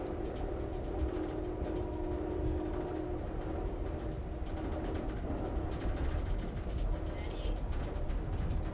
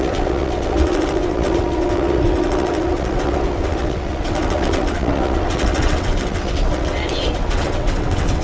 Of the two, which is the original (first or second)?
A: first